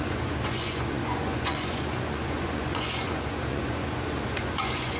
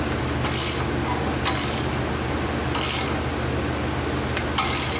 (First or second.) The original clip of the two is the second